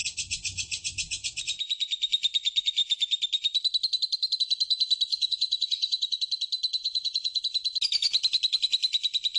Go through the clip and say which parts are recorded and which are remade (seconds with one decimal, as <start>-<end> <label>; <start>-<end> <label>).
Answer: 0.0-1.4 remade; 1.4-5.1 recorded; 5.1-6.2 remade; 6.2-6.8 recorded; 6.8-7.4 remade; 7.4-9.4 recorded